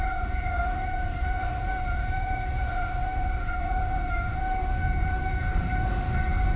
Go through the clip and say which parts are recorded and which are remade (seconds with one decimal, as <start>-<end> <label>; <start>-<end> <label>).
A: 0.0-6.6 remade